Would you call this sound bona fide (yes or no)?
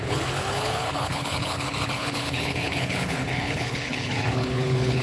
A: no